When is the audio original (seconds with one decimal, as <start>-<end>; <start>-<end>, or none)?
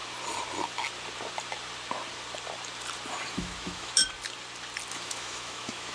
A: 0.0-3.3; 4.0-4.9